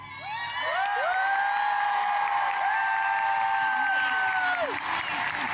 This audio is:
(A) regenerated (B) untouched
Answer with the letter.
B